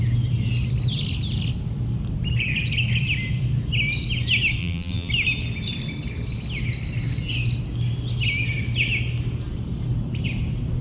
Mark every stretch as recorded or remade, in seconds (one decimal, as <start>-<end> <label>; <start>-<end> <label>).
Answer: 0.0-4.6 recorded; 4.6-5.1 remade; 5.1-10.8 recorded